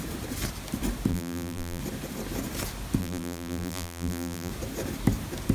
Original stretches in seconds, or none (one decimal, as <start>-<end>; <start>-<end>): 0.0-1.1; 1.8-3.0; 4.5-5.5